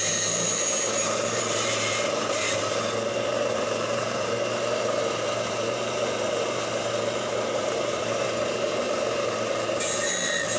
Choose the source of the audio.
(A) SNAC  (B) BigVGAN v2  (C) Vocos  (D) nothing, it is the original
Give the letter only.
B